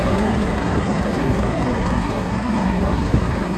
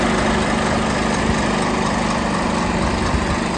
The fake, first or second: first